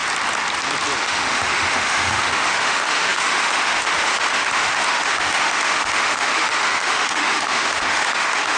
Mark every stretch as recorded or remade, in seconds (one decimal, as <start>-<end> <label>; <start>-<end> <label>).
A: 0.0-1.0 recorded; 1.0-8.6 remade